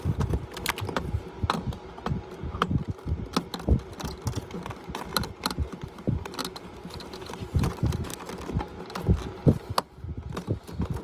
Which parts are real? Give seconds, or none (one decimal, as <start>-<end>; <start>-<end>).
0.0-5.1; 7.0-11.0